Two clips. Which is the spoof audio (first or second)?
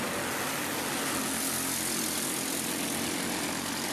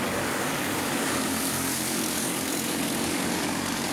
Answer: second